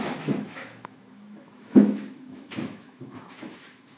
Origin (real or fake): fake